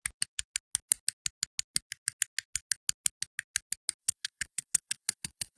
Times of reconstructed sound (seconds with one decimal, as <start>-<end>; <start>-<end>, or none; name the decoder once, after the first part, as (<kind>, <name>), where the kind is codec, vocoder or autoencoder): 4.0-5.6 (vocoder, WaveNeXt)